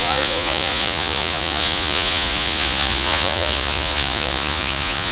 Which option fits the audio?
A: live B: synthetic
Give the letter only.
B